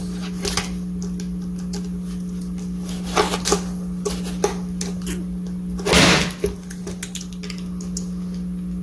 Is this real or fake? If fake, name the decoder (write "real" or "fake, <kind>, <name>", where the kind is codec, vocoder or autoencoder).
real